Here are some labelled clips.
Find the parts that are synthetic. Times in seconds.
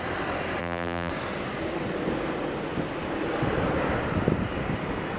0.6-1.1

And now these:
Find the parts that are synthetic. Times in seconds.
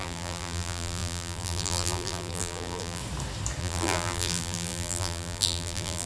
0.0-3.0; 3.6-6.1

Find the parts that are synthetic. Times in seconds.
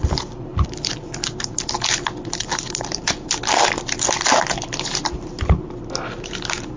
none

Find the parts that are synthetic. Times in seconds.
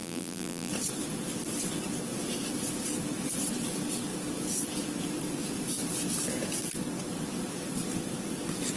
0.0-0.7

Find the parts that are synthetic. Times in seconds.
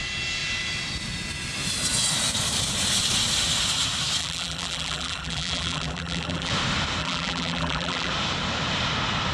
4.2-6.5; 7.0-8.1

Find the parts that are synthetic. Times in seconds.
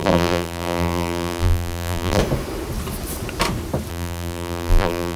0.0-2.2; 3.9-5.2